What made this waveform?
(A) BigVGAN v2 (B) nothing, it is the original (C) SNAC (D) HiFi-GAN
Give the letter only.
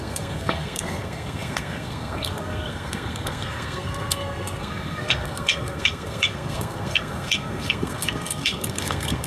C